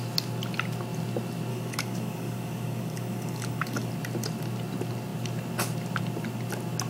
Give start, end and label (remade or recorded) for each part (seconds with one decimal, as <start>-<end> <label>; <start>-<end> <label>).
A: 0.0-1.5 recorded; 1.5-3.9 remade; 3.9-6.9 recorded